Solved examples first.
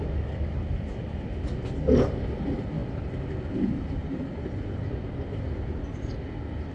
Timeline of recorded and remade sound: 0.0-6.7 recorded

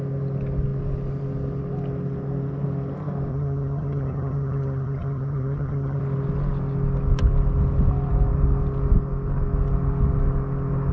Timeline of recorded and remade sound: 0.0-3.3 recorded; 3.3-6.0 remade; 6.0-10.9 recorded